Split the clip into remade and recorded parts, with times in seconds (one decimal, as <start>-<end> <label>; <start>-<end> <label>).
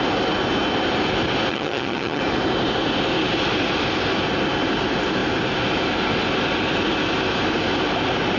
0.0-1.5 recorded; 1.5-2.2 remade; 2.2-8.4 recorded